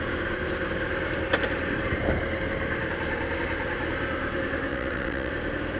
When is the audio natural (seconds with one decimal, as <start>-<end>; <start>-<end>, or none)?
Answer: 0.0-4.7; 5.3-5.8